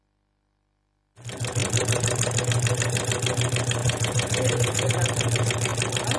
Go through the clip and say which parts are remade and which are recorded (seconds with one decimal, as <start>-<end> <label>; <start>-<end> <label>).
0.0-3.8 recorded; 3.8-4.9 remade; 4.9-6.2 recorded